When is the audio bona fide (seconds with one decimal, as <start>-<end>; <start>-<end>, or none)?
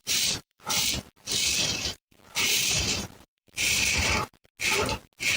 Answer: 0.9-1.3; 4.5-5.4